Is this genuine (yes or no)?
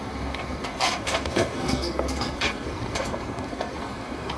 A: no